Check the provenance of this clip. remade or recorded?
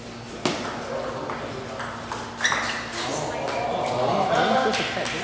recorded